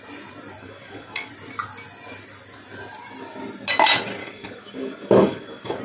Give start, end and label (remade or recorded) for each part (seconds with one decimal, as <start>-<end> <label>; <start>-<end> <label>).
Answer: 0.0-0.6 recorded; 0.6-1.3 remade; 1.3-4.2 recorded; 4.2-5.8 remade